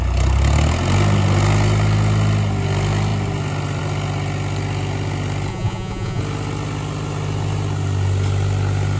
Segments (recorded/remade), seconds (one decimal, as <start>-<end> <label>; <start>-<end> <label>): 0.0-5.5 recorded; 5.5-6.2 remade; 6.2-9.0 recorded